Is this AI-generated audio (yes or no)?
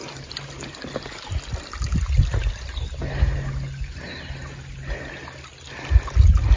no